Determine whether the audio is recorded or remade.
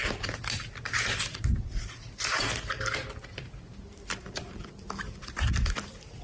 recorded